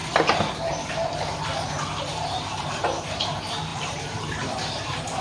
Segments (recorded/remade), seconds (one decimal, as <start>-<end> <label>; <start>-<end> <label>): 0.0-3.7 recorded; 3.7-5.2 remade